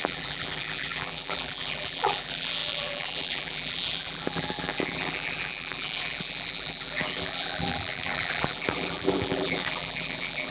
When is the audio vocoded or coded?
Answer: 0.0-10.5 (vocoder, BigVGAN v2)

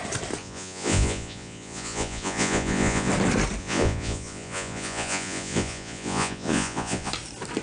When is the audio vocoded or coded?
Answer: 0.4-3.1 (vocoder, Vocos); 3.6-7.1

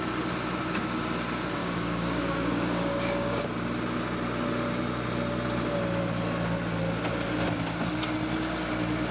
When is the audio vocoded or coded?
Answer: 1.6-3.4 (codec, DAC)

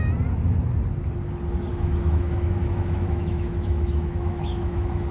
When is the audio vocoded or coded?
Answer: 1.7-5.1 (autoencoder, DAC-VAE)

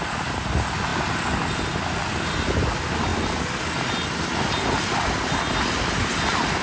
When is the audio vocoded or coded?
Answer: none

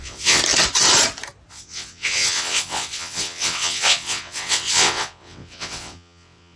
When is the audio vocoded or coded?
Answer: 0.0-0.4 (vocoder, WaveNeXt); 1.5-6.6